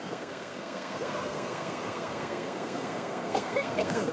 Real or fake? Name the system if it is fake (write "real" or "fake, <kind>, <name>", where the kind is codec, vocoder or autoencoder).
fake, codec, SNAC